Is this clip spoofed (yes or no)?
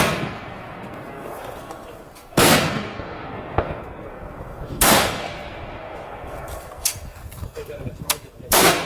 yes